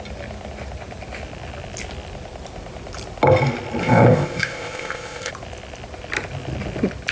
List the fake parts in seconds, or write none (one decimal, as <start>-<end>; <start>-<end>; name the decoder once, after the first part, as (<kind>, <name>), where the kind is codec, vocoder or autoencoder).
3.8-5.3 (codec, ZipCodec)